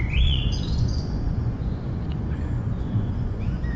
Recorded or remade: remade